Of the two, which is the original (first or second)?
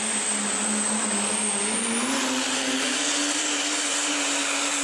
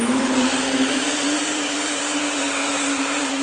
first